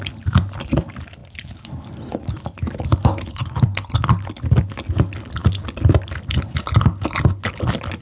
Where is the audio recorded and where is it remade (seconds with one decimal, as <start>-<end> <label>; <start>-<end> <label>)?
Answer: 0.0-8.0 recorded